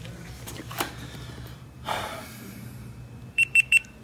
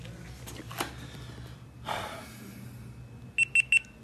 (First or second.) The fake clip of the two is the first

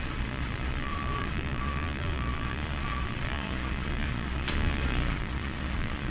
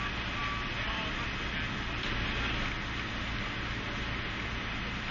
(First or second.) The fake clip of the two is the first